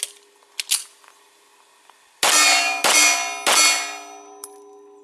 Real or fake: real